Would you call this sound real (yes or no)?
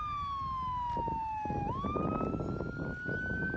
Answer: yes